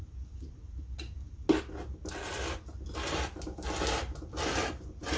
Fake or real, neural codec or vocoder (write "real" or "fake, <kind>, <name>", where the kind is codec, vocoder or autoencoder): real